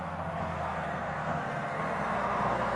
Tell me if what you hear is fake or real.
fake